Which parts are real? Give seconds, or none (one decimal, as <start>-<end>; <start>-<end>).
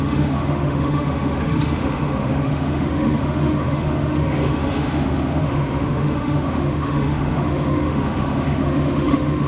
none